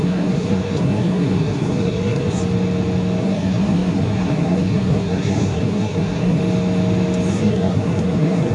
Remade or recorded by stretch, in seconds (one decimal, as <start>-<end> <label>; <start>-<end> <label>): 0.0-2.4 remade; 2.4-3.2 recorded; 3.2-6.4 remade; 6.4-7.3 recorded; 7.3-8.5 remade